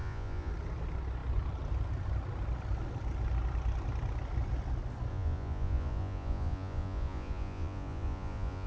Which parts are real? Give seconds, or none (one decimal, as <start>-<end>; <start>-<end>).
0.5-5.1